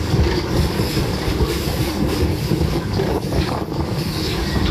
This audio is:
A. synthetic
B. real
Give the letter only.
A